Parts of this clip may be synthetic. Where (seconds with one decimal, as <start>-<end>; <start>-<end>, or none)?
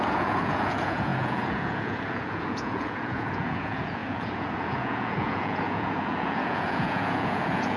0.0-7.8